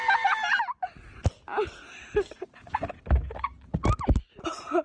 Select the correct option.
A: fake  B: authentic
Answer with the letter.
B